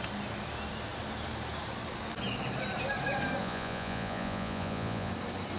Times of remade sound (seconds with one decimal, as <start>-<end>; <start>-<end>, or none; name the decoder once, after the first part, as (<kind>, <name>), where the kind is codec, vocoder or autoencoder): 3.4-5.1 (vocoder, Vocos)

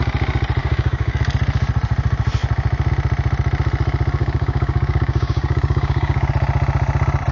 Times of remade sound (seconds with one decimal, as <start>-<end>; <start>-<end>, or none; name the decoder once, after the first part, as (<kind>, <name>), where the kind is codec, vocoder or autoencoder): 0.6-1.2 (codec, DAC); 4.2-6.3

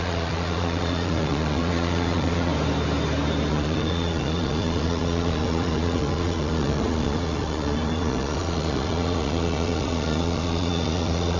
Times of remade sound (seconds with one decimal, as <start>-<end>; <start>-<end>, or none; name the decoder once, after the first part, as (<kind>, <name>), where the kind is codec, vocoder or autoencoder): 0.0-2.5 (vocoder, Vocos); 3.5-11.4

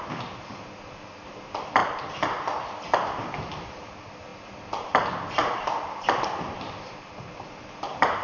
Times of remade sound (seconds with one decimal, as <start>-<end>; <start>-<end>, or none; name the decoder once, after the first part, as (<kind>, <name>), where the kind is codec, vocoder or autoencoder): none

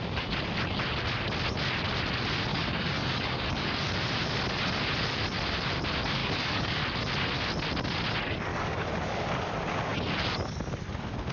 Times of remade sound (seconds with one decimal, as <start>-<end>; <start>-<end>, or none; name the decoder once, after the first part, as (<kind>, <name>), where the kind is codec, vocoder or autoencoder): 2.5-3.9 (codec, DAC); 6.2-6.8; 8.5-9.5

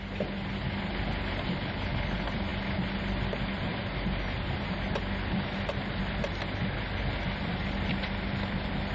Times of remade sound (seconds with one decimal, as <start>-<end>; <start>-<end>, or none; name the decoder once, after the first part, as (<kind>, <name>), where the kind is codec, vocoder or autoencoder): none

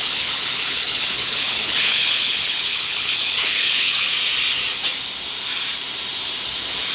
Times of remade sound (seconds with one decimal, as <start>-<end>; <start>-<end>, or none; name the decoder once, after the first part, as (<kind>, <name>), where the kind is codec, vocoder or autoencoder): 0.0-4.1 (codec, HILCodec)